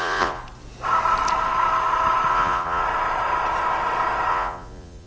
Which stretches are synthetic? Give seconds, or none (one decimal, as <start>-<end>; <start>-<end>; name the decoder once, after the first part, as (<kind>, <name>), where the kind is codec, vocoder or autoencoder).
0.0-0.4 (vocoder, Vocos); 2.3-2.8; 4.3-5.1